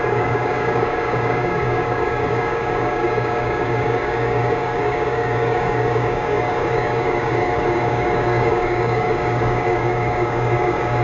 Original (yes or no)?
no